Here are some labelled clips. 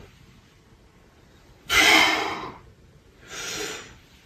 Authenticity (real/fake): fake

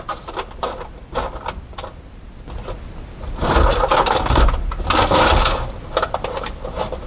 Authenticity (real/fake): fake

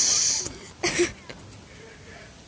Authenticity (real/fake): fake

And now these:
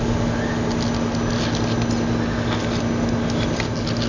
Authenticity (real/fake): real